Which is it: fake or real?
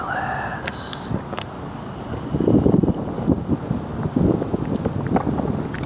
real